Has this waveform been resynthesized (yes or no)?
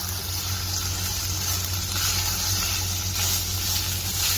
no